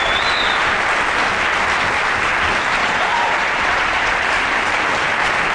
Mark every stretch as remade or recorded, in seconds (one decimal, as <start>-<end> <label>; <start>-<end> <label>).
0.0-2.8 recorded; 2.8-4.2 remade; 4.2-5.5 recorded